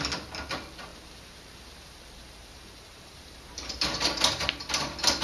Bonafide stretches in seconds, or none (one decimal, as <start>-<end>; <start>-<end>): 0.0-0.9; 4.0-5.2